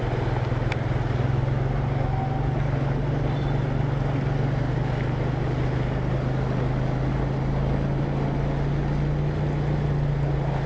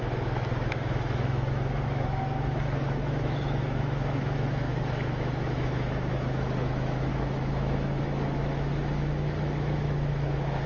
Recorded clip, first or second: first